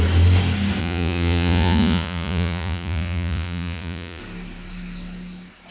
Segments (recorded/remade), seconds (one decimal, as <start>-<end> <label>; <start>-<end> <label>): 0.0-0.8 recorded; 0.8-4.2 remade; 4.2-5.7 recorded